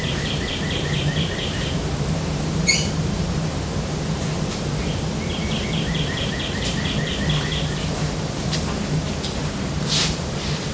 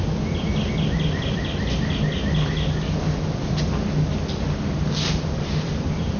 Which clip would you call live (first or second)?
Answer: second